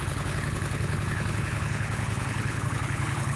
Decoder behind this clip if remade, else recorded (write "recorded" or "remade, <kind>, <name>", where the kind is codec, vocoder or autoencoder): remade, codec, HILCodec